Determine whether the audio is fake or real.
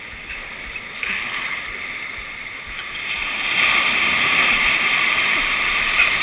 real